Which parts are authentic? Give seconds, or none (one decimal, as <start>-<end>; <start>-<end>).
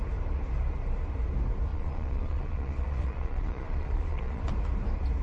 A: 0.0-1.7; 4.4-5.2